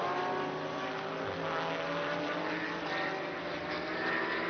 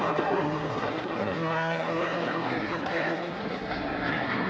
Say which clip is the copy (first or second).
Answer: second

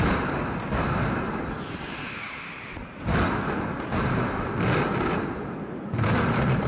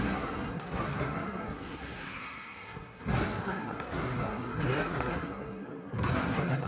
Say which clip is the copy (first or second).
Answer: second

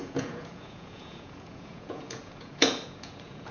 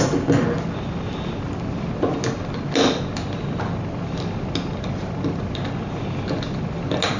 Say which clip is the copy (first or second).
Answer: first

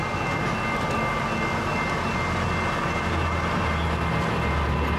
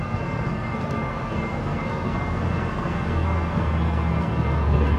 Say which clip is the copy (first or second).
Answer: second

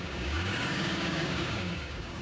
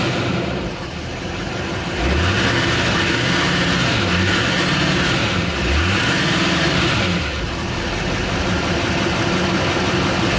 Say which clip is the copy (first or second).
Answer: first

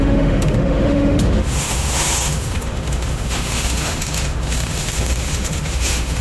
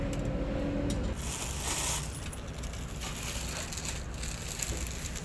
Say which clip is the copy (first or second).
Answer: first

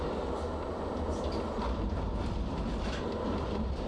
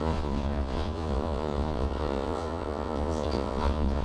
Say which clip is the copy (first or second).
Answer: second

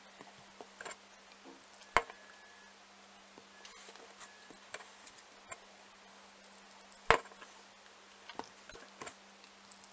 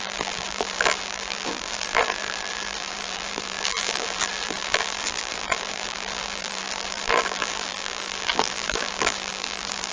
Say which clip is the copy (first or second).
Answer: second